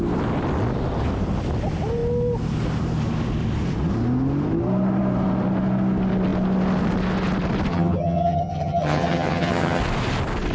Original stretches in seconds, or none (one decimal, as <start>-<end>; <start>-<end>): 0.0-7.7; 9.8-10.5